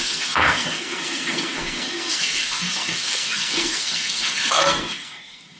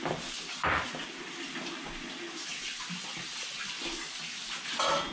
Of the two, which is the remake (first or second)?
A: first